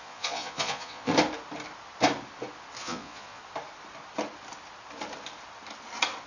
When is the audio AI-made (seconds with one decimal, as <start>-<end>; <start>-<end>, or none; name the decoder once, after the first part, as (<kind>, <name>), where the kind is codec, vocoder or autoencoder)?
0.0-1.1 (vocoder, Vocos); 2.8-3.4